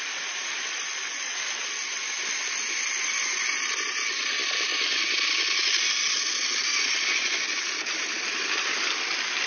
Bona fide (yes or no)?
yes